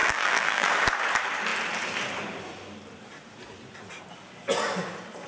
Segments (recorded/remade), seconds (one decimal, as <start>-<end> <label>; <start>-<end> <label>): 0.0-0.7 remade; 0.7-5.3 recorded